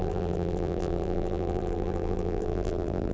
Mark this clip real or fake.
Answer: fake